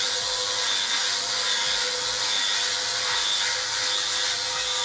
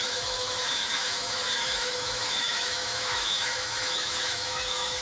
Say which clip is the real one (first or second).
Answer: first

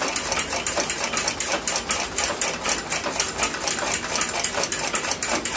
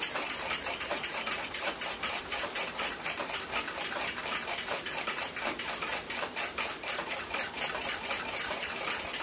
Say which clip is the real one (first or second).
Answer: first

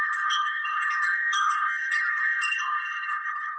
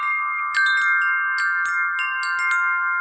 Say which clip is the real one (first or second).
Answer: second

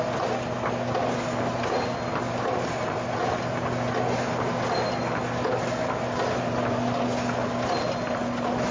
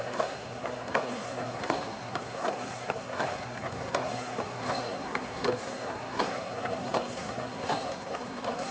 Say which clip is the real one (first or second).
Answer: first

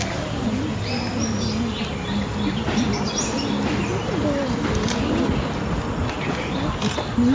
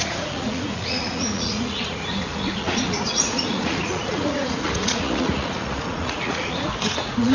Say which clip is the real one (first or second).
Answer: first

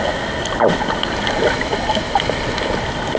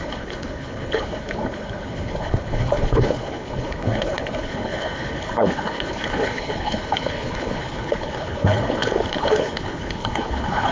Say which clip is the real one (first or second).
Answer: first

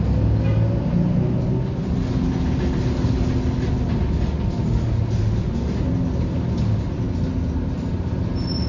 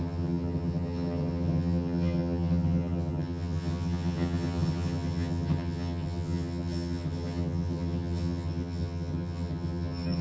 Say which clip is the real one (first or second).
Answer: first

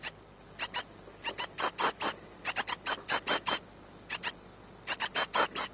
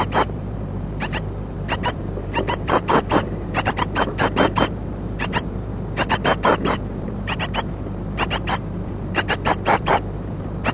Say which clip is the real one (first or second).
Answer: first